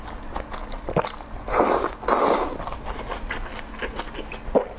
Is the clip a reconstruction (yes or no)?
no